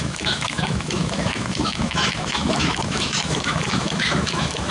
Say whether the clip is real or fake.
fake